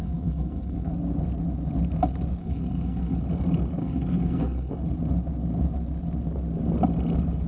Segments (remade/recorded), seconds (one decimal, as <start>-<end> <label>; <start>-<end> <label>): 0.0-0.9 remade; 0.9-2.4 recorded; 2.4-3.2 remade; 3.2-3.8 recorded; 3.8-4.7 remade; 4.7-7.5 recorded